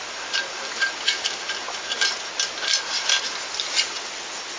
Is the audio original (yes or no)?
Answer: yes